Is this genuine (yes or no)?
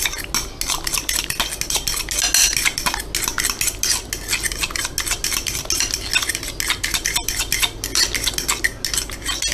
yes